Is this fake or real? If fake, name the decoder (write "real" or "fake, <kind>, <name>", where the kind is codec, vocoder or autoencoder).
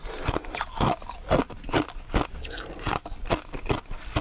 real